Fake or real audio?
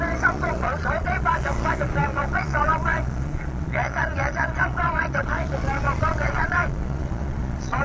fake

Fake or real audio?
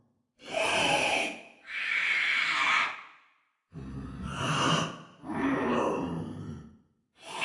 real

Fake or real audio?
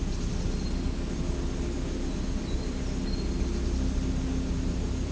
real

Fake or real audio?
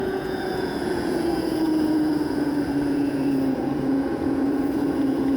fake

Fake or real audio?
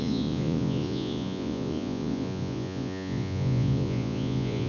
fake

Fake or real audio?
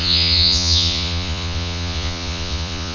fake